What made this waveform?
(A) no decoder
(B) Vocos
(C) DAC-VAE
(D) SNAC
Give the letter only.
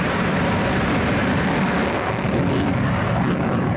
A